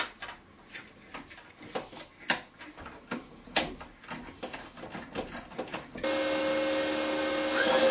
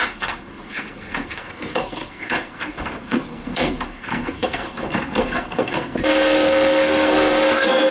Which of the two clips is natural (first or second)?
first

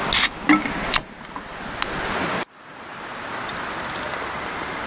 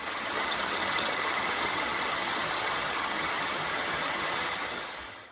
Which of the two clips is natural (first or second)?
first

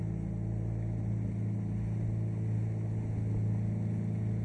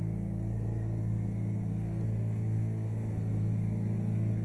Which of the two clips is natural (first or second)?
first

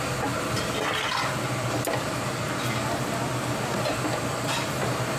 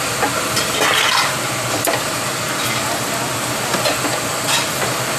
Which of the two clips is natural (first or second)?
first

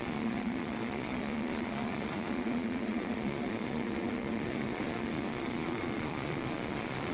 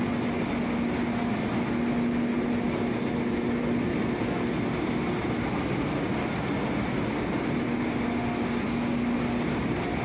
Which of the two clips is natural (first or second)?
second